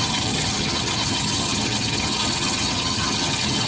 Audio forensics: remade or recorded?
remade